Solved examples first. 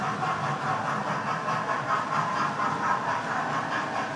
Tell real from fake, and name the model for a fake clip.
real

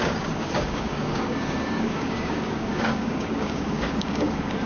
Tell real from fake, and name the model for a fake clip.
fake, codec, DAC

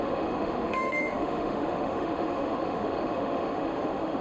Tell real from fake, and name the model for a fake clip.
fake, autoencoder, DAC-VAE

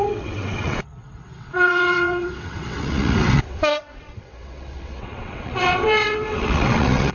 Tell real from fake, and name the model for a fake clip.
fake, vocoder, WaveNeXt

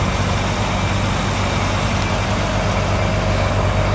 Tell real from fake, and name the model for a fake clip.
real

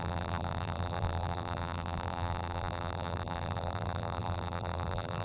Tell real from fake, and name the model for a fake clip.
fake, vocoder, BigVGAN v2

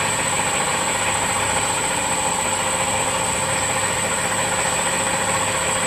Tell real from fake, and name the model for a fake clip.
fake, vocoder, BigVGAN v2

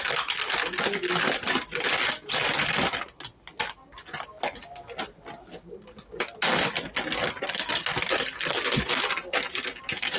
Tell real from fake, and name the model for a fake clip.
real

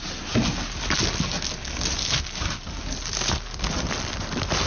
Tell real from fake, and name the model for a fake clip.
real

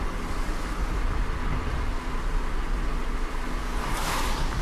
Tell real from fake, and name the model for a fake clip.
real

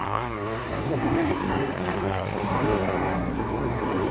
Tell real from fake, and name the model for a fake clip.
fake, codec, SNAC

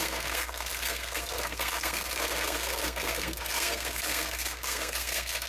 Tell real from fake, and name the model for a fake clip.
fake, codec, SNAC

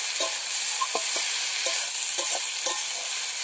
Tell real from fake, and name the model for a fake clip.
real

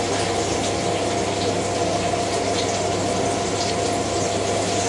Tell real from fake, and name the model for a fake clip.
real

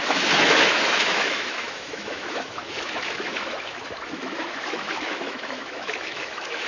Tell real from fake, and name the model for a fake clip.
fake, autoencoder, DAC-VAE